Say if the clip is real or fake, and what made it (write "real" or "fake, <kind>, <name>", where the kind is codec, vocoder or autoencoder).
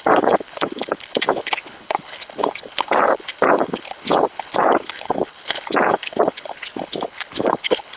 fake, codec, HILCodec